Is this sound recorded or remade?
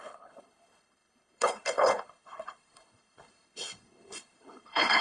remade